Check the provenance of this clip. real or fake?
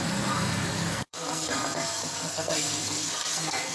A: fake